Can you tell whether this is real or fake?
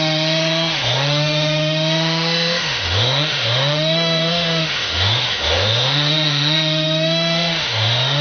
fake